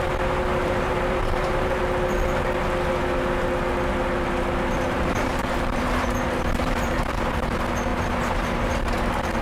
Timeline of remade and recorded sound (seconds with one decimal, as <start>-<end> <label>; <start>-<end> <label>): 0.0-0.5 recorded; 0.5-1.8 remade; 1.8-4.7 recorded; 4.7-7.5 remade; 7.5-7.9 recorded; 7.9-8.9 remade; 8.9-9.4 recorded